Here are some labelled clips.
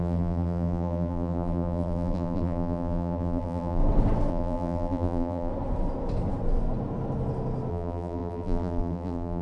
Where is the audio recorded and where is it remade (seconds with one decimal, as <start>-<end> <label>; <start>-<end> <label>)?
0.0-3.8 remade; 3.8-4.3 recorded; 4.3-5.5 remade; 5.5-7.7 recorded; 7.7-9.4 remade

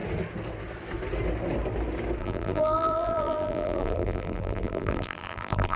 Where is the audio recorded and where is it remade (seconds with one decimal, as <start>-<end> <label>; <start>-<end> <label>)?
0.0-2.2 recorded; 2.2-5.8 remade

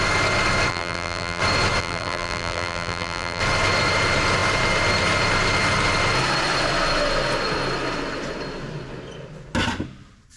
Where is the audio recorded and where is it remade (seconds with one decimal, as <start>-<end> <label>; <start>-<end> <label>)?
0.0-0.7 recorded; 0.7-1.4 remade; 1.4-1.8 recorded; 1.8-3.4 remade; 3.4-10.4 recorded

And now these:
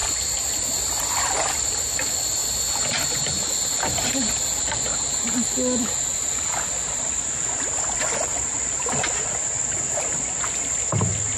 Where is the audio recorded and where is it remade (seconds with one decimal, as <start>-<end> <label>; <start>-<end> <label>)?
0.0-8.3 recorded; 8.3-9.2 remade; 9.2-11.4 recorded